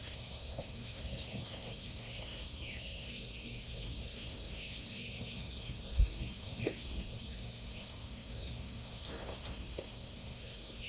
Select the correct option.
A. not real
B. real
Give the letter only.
A